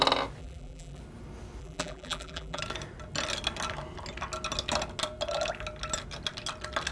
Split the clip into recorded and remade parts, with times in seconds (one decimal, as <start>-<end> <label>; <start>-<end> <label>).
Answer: 0.0-0.4 recorded; 0.4-1.0 remade; 1.0-1.6 recorded; 1.6-2.6 remade; 2.6-6.9 recorded